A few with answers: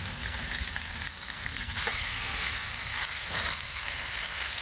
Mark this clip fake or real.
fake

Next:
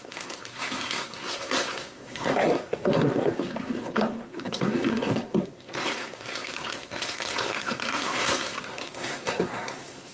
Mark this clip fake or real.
fake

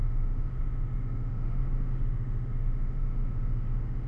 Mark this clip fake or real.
fake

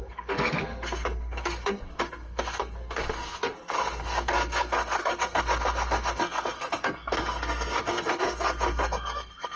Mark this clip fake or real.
fake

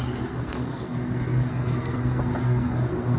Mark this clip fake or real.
fake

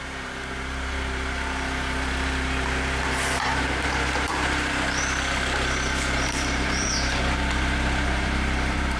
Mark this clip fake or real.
fake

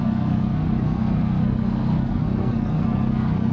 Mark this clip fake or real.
fake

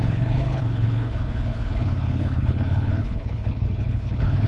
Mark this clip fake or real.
fake